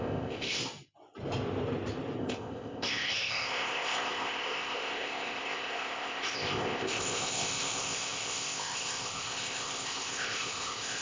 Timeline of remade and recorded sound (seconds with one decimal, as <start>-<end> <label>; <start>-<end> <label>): 0.0-0.6 remade; 0.6-2.2 recorded; 2.2-11.0 remade